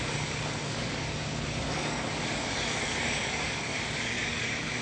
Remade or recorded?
remade